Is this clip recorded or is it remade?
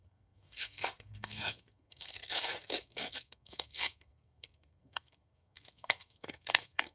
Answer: remade